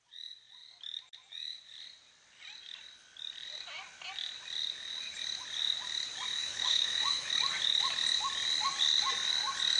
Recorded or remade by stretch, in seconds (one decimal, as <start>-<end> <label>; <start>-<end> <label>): 0.0-6.3 recorded; 6.3-7.4 remade; 7.4-9.8 recorded